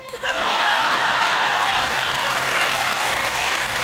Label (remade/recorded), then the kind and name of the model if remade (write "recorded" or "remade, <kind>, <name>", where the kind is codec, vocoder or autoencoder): remade, codec, DAC